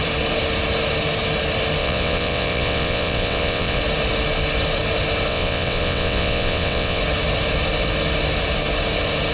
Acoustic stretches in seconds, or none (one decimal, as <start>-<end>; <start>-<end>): 0.0-1.8; 3.8-5.3; 7.0-9.3